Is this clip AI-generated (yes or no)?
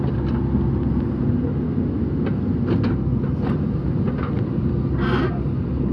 no